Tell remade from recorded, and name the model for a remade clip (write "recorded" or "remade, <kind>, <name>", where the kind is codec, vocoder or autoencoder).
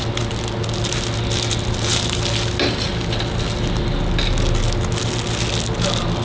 recorded